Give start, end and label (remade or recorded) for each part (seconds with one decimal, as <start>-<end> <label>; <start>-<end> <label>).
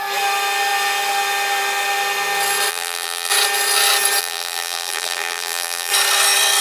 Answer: 0.0-2.7 recorded; 2.7-3.3 remade; 3.3-4.2 recorded; 4.2-5.9 remade; 5.9-6.6 recorded